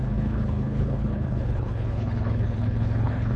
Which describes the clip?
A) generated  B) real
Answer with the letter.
A